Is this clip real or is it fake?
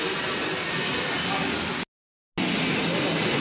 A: real